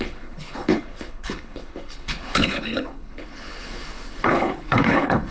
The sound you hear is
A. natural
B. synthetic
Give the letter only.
B